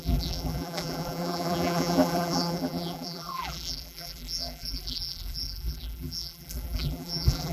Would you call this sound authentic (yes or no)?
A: no